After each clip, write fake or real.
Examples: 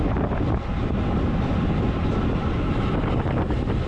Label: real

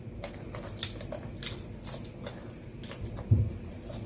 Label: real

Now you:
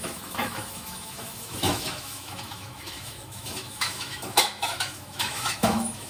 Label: fake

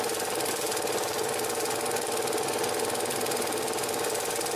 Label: real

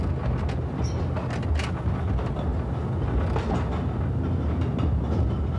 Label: real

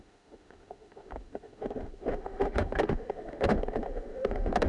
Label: fake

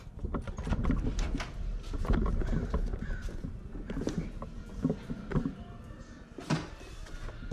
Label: real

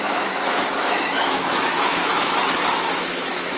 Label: fake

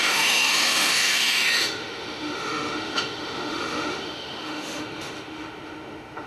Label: fake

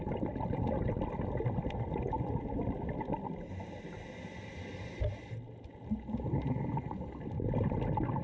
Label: real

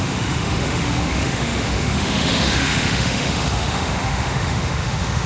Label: fake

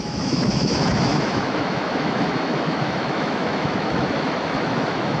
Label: fake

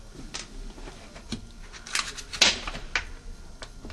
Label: real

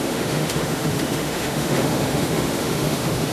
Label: fake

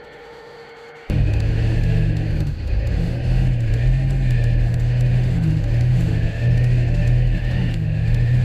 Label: fake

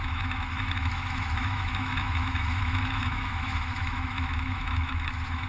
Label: fake